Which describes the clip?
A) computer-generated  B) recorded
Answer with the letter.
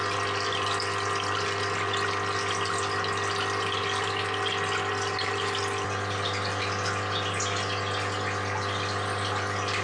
B